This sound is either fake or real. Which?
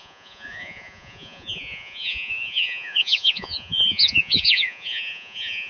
fake